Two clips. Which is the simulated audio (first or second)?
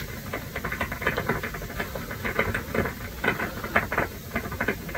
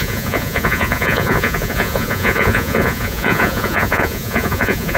second